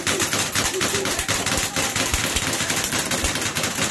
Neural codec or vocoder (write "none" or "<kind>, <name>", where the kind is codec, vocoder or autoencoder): none